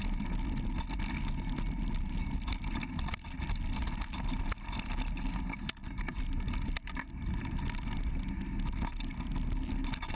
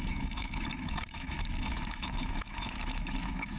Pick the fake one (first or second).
second